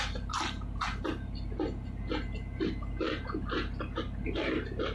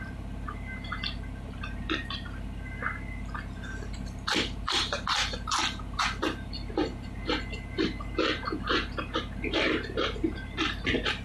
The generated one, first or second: second